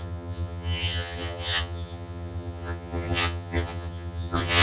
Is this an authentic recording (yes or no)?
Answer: no